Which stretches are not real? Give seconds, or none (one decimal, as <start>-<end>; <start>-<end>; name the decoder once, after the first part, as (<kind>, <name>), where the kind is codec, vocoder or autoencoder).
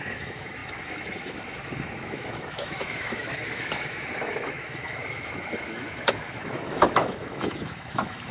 0.0-8.3 (autoencoder, DAC-VAE)